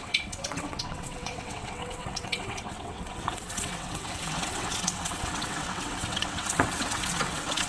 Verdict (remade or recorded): remade